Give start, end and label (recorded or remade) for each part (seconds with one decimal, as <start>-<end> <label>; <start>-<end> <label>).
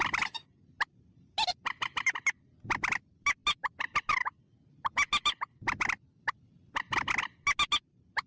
0.0-8.3 recorded